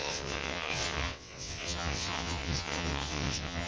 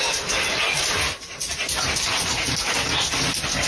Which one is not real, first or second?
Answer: first